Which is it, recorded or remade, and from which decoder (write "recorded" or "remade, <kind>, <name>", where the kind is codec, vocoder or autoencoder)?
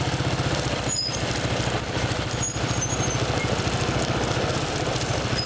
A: recorded